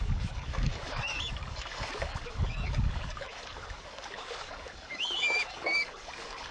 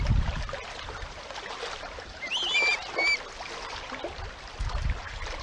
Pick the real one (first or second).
second